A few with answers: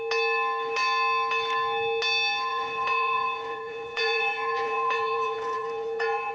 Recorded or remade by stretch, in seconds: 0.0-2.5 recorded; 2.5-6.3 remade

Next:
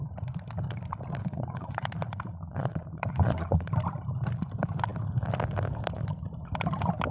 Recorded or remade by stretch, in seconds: 0.0-1.2 recorded; 1.2-3.7 remade; 3.7-7.1 recorded

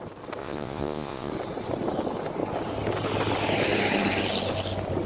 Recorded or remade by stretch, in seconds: 0.0-0.4 recorded; 0.4-1.3 remade; 1.3-5.1 recorded

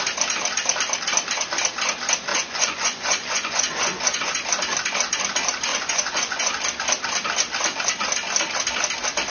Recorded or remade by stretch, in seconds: 0.0-2.3 recorded; 2.3-4.3 remade; 4.3-5.7 recorded; 5.7-6.5 remade; 6.5-9.3 recorded